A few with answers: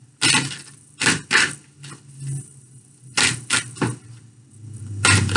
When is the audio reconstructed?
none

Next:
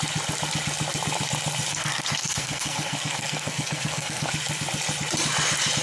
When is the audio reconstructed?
1.7-4.3

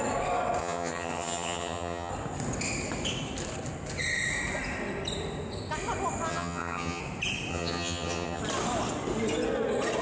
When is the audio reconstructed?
0.6-2.1; 6.3-7.0; 7.5-8.4

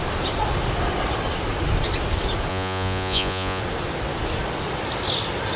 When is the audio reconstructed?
2.5-3.6

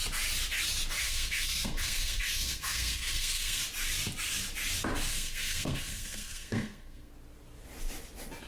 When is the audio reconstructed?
1.0-3.6; 5.1-7.1

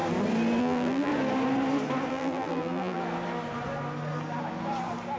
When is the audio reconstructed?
0.6-1.1; 2.1-3.0

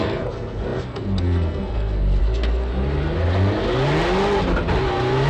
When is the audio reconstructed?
0.0-2.7

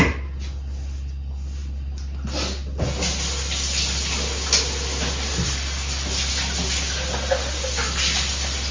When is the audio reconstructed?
none